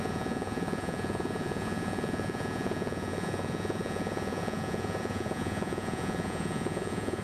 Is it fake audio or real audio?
fake